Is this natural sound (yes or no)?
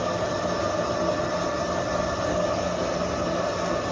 yes